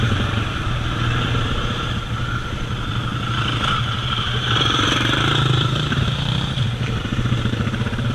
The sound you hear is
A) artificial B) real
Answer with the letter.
A